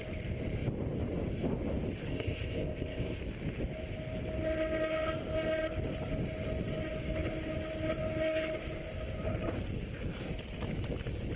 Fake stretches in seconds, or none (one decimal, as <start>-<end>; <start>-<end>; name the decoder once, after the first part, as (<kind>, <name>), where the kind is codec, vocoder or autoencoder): 2.1-3.2 (codec, ZipCodec)